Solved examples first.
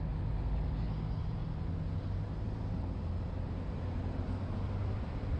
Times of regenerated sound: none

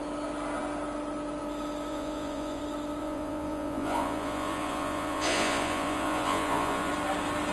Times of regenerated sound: 1.9-2.6 (vocoder, Vocos); 3.0-6.9

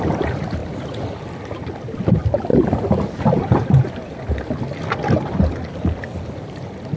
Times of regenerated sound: none

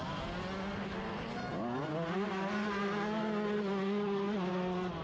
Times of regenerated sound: none

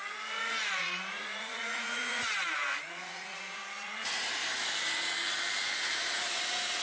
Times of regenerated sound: 0.0-4.4 (vocoder, Vocos); 5.8-6.8

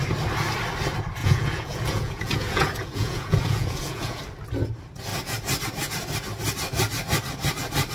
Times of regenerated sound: 1.2-4.2 (vocoder, Vocos)

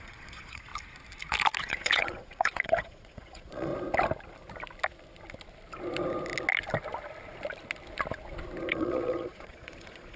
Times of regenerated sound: 0.0-0.7 (vocoder, Vocos); 1.6-3.7; 8.7-10.2

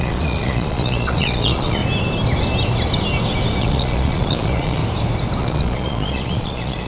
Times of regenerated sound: 0.0-1.8 (vocoder, Vocos); 3.6-4.8; 5.4-6.9